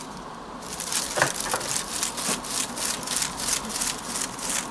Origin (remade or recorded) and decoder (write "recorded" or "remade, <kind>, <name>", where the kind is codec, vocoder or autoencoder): recorded